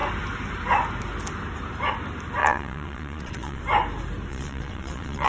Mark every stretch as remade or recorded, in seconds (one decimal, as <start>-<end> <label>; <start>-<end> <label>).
0.0-2.4 recorded; 2.4-3.6 remade; 3.6-4.3 recorded; 4.3-5.3 remade